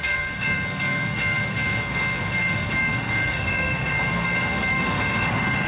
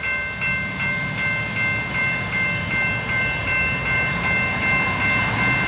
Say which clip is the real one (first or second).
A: second